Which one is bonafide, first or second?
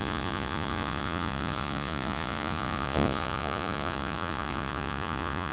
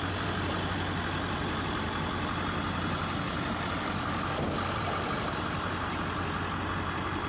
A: second